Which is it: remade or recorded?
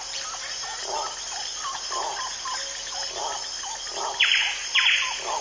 recorded